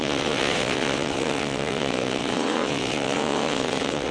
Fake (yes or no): yes